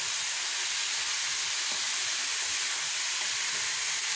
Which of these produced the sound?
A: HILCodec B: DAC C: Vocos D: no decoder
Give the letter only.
D